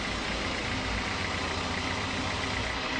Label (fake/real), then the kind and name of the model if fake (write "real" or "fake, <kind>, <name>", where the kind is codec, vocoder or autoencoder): real